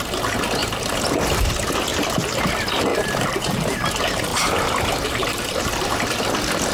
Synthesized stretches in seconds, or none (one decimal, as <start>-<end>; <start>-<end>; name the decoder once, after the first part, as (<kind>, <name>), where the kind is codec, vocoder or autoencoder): 0.6-1.5 (vocoder, BigVGAN v2); 1.9-2.4; 2.9-3.9; 4.3-6.2